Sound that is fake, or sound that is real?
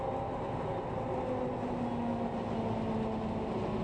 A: real